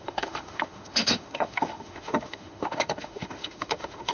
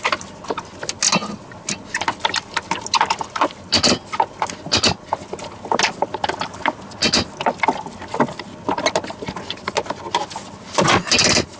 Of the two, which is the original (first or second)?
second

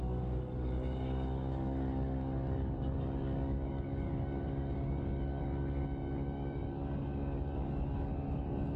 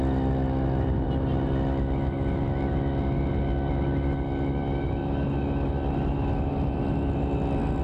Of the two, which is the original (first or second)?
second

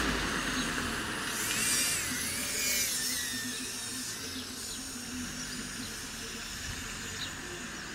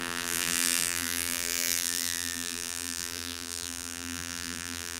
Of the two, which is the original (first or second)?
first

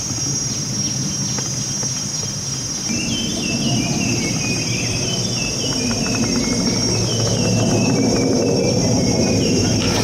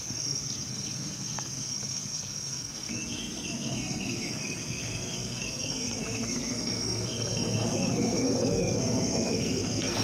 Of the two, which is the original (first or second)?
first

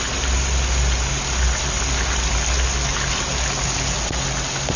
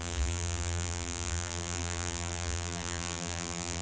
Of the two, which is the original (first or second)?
first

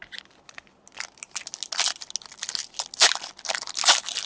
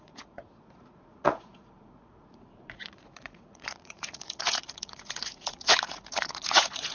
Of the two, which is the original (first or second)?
first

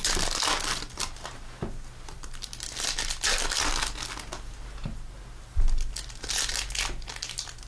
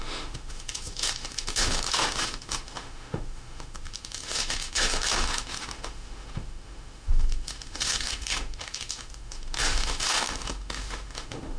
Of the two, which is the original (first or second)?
first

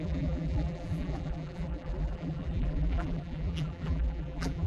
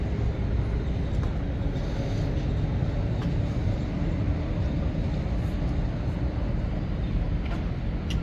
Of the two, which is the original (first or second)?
second